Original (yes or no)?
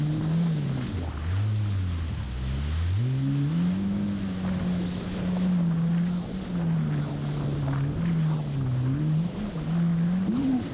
yes